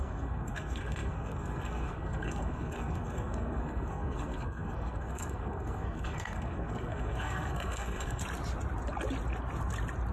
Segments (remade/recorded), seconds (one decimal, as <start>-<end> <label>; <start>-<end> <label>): 0.0-8.2 remade; 8.2-10.1 recorded